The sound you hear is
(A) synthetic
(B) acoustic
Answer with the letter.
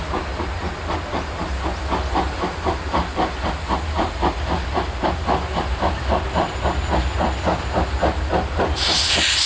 B